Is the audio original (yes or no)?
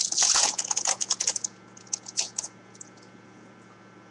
no